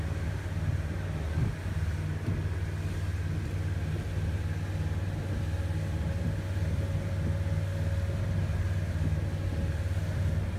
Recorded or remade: recorded